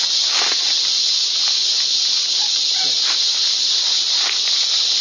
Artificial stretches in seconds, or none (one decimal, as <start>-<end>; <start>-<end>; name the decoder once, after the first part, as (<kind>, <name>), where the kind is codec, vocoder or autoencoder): none